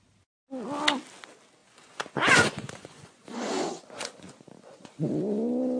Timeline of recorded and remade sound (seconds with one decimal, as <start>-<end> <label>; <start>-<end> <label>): 0.0-1.6 recorded; 1.6-5.1 remade; 5.1-5.8 recorded